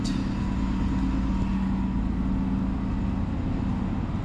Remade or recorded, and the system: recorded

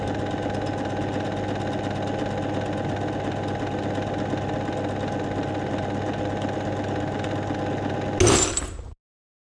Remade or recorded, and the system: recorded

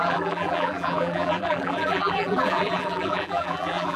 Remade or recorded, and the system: remade, vocoder, BigVGAN v2